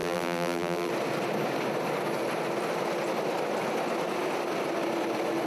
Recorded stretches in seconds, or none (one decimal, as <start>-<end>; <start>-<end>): 0.9-5.5